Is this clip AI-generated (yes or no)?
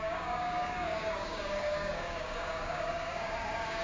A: yes